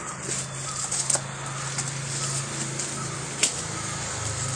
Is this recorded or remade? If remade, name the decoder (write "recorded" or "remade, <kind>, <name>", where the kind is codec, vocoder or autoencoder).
recorded